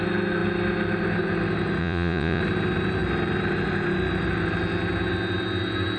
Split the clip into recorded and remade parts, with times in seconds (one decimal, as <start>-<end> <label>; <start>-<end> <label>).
0.0-1.8 recorded; 1.8-2.4 remade; 2.4-6.0 recorded